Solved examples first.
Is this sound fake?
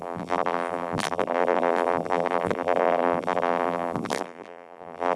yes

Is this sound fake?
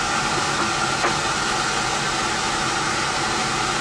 no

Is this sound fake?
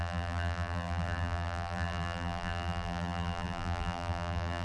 yes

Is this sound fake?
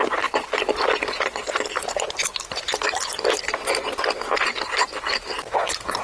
no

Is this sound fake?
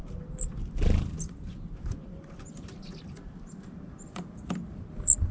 yes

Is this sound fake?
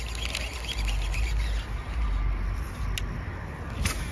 no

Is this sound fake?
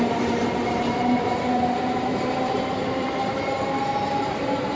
yes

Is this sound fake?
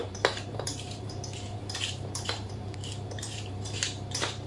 yes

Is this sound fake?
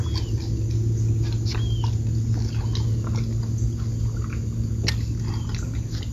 no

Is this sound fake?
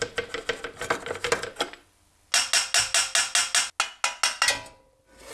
no